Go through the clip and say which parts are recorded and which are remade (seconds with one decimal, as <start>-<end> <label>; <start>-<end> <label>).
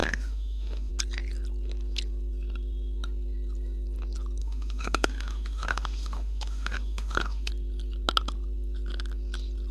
0.0-0.9 remade; 0.9-4.4 recorded; 4.4-7.5 remade; 7.5-9.7 recorded